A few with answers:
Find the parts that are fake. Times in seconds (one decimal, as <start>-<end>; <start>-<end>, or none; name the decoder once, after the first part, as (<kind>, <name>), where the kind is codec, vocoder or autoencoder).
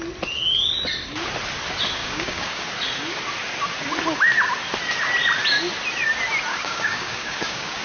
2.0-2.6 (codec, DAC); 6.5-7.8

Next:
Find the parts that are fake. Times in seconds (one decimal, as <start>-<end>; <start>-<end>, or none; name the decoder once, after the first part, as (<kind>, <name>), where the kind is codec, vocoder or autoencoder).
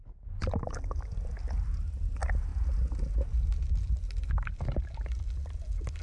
none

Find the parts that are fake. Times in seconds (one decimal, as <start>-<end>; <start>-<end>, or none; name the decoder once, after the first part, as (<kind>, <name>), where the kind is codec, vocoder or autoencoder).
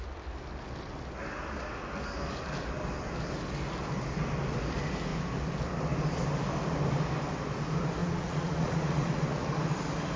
8.0-9.5 (vocoder, Vocos)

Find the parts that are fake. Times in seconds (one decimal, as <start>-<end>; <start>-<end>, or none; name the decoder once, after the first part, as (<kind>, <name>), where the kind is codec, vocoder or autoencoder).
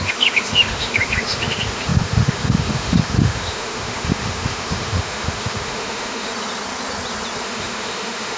0.0-6.3 (autoencoder, DAC-VAE); 7.4-8.4